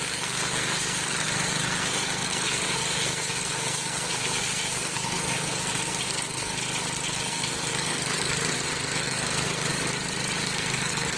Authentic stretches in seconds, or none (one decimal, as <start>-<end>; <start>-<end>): 6.6-7.1; 9.7-10.4